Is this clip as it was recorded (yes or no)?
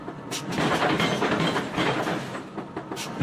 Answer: yes